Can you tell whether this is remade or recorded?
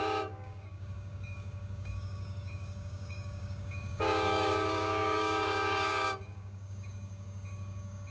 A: remade